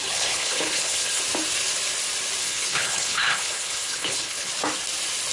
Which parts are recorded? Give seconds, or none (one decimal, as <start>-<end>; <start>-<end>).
1.2-2.4; 4.5-5.3